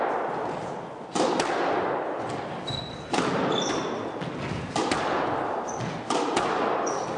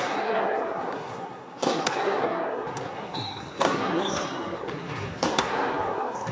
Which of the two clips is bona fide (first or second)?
first